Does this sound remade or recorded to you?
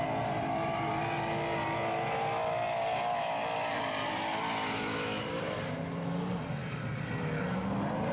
recorded